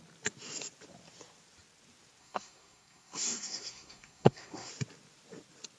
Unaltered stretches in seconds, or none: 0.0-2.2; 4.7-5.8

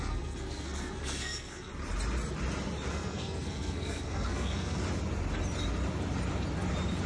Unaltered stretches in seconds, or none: 1.7-2.9; 4.8-7.1

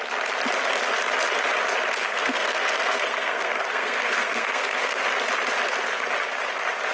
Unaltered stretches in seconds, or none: 0.0-2.0; 5.0-6.9

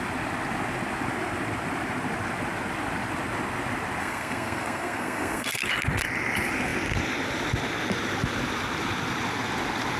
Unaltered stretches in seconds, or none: 0.0-4.0; 5.6-10.0

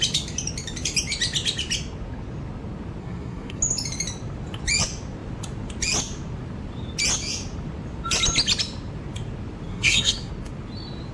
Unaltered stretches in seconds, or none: 0.0-3.0; 3.6-9.7; 10.3-11.1

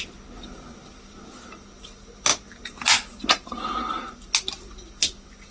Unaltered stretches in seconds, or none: 0.0-5.5

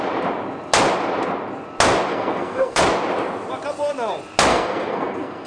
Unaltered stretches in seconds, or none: 0.0-2.1; 2.8-4.5

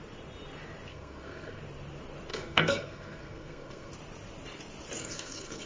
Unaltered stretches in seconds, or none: 0.0-0.9; 1.6-2.3; 3.9-5.0